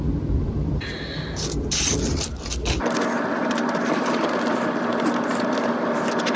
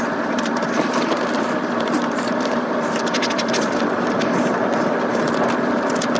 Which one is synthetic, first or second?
second